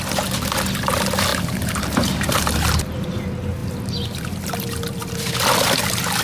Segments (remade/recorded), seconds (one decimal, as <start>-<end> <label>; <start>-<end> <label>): 0.0-1.3 recorded; 1.3-2.9 remade; 2.9-6.2 recorded